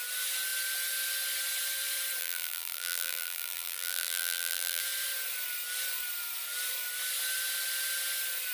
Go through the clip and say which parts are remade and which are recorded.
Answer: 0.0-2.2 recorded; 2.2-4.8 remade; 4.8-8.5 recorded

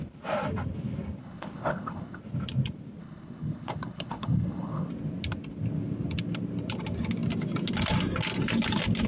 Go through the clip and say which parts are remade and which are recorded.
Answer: 0.0-1.2 recorded; 1.2-2.2 remade; 2.2-3.0 recorded; 3.0-4.9 remade; 4.9-9.1 recorded

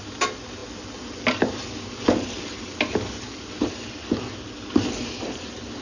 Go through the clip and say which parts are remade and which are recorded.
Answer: 0.0-5.8 recorded

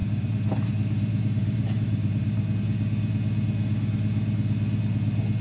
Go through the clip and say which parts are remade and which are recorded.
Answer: 0.0-2.6 remade; 2.6-5.4 recorded